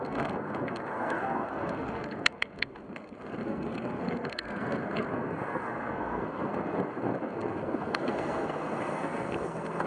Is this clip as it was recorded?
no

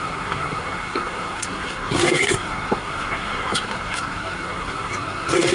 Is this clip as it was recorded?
no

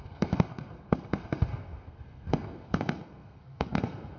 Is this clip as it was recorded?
no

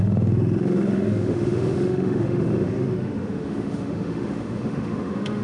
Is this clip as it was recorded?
no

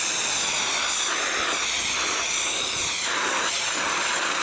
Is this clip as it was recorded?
yes